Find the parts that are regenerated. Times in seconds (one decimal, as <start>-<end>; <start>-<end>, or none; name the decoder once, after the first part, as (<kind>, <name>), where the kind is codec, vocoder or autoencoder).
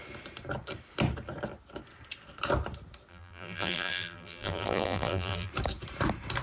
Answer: 3.1-5.5 (vocoder, BigVGAN v2)